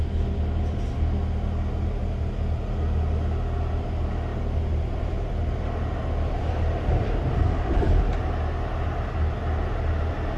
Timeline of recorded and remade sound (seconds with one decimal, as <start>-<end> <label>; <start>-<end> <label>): 0.0-10.4 recorded